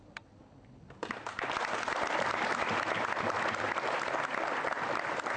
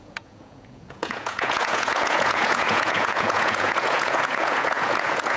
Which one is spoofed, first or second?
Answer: second